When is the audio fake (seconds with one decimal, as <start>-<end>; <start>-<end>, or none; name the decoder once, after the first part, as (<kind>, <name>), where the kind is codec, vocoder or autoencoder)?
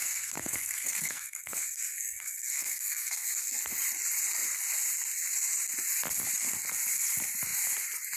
0.0-3.6 (codec, SNAC)